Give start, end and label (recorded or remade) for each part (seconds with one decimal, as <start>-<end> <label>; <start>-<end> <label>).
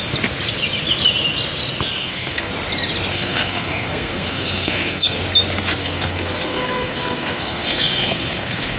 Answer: 0.0-2.0 recorded; 2.0-2.5 remade; 2.5-3.1 recorded; 3.1-5.2 remade; 5.2-5.8 recorded; 5.8-8.8 remade